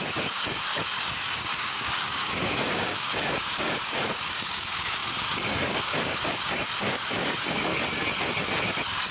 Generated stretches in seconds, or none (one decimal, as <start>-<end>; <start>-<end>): 0.0-7.7